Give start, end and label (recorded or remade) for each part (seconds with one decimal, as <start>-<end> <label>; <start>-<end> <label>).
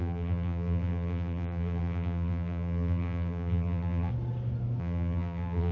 0.0-4.1 remade; 4.1-4.8 recorded; 4.8-5.7 remade